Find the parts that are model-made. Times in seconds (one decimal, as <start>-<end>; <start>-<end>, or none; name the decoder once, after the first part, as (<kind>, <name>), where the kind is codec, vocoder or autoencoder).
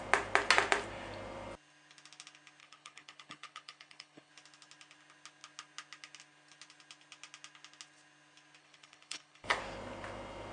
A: 2.6-4.3 (codec, HILCodec); 8.6-9.6